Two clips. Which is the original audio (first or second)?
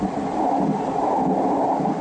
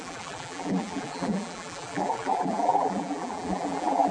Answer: first